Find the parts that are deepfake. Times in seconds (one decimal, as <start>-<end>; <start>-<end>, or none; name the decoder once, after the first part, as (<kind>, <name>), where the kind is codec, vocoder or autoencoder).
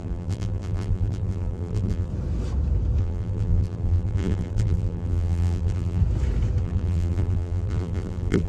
0.0-2.1 (vocoder, BigVGAN v2); 3.0-6.0; 6.6-8.5